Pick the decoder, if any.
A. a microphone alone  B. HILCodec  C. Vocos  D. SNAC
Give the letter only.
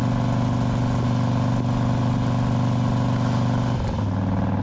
A